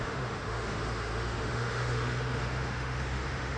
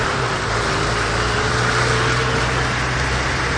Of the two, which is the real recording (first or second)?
second